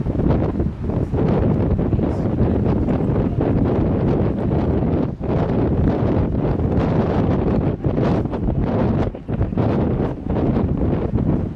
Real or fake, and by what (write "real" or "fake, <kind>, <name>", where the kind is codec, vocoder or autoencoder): real